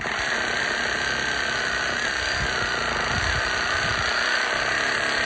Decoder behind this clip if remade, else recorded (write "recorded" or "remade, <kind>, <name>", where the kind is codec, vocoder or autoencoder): recorded